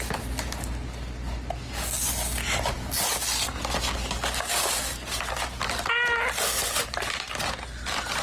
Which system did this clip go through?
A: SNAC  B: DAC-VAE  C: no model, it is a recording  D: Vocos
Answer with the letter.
C